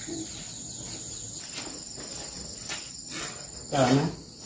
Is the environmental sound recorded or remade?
recorded